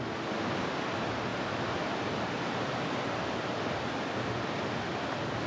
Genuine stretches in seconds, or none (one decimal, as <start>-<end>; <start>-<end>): 0.0-5.5